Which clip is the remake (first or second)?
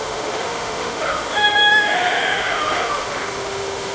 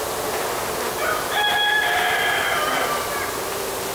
first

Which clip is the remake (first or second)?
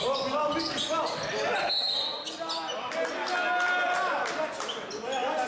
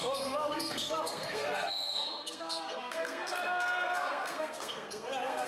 second